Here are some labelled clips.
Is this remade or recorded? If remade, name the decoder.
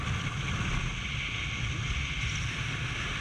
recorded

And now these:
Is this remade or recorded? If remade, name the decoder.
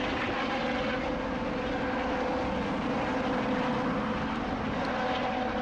recorded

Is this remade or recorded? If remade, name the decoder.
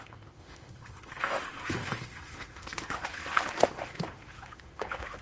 remade, autoencoder, DAC-VAE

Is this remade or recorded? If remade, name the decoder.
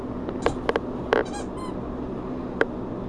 recorded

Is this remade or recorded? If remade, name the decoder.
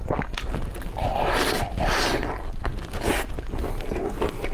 recorded